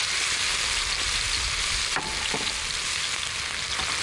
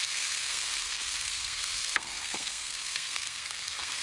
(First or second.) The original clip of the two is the first